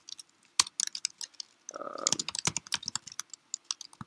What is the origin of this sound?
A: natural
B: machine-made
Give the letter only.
A